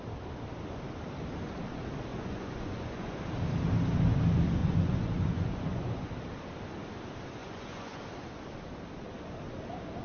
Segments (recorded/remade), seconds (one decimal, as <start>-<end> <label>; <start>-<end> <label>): 0.0-2.1 recorded; 2.1-3.2 remade; 3.2-4.6 recorded; 4.6-6.1 remade; 6.1-7.4 recorded; 7.4-8.0 remade; 8.0-10.0 recorded